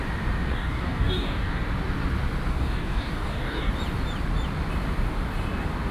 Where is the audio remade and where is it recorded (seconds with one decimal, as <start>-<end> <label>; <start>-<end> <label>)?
0.0-0.5 recorded; 0.5-1.6 remade; 1.6-2.5 recorded; 2.5-3.7 remade; 3.7-5.9 recorded